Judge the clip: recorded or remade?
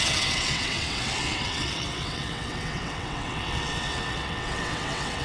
remade